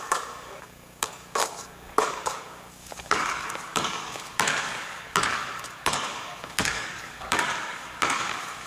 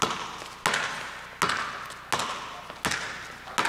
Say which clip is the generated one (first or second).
first